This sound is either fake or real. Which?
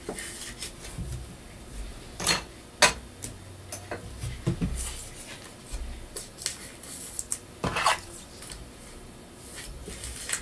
real